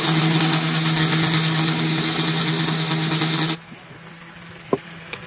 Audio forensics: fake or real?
real